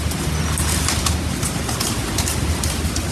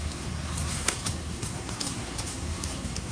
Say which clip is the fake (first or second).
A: second